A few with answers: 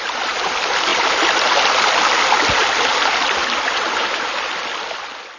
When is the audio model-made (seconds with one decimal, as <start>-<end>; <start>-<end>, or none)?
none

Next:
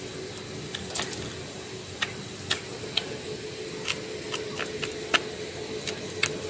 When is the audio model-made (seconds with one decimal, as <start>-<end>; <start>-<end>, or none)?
none

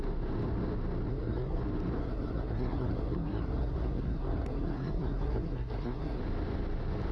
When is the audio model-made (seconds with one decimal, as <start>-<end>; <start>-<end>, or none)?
1.1-1.6; 2.0-6.2